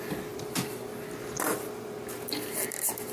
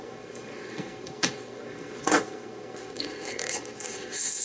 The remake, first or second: second